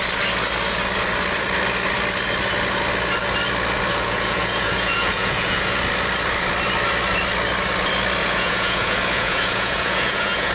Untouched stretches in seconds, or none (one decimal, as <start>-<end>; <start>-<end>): 0.0-3.9; 5.8-8.2